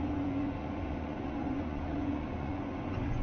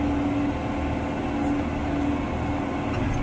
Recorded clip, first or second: second